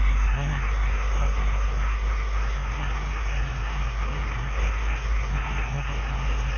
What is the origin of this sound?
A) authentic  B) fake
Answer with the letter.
B